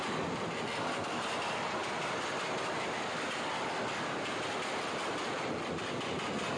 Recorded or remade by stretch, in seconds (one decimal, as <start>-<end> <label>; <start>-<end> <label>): 0.0-6.6 recorded